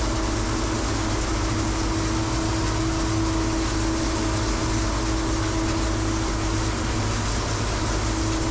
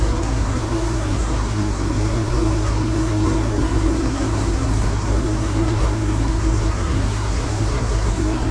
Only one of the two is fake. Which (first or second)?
second